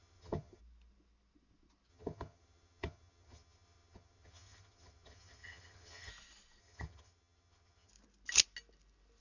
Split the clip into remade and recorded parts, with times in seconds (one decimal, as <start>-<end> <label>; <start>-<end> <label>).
0.0-0.6 remade; 0.6-1.9 recorded; 1.9-6.1 remade; 6.1-6.6 recorded; 6.6-7.9 remade; 7.9-9.2 recorded